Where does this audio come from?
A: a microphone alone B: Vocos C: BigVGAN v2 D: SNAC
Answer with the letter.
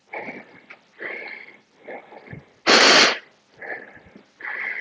A